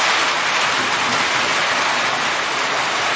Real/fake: real